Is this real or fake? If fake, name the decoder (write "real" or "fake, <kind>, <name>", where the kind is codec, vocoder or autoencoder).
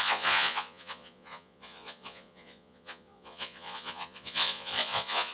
fake, vocoder, Vocos